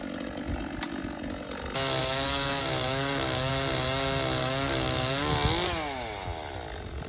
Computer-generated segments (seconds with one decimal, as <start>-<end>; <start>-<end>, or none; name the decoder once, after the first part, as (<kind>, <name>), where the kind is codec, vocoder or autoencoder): 2.0-3.5 (codec, DAC); 4.4-5.3